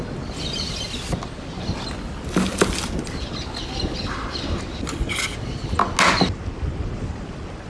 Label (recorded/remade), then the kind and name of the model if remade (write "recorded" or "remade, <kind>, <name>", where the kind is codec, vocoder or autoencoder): recorded